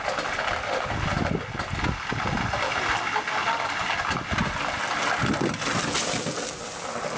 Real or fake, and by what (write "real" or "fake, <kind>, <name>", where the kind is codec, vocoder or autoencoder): real